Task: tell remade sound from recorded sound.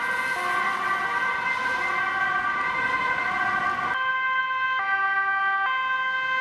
recorded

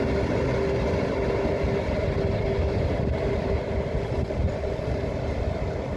recorded